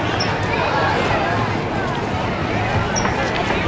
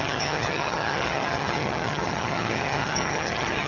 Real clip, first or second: first